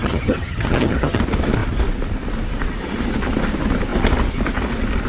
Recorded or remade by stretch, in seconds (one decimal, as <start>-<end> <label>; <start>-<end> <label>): 0.0-1.2 remade; 1.2-5.1 recorded